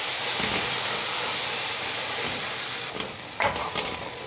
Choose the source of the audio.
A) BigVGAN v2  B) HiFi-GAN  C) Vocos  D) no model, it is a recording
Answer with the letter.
D